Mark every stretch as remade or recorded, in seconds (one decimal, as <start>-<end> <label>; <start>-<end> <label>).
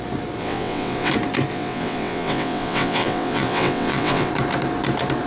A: 0.0-0.4 recorded; 0.4-1.1 remade; 1.1-1.5 recorded; 1.5-4.3 remade; 4.3-5.3 recorded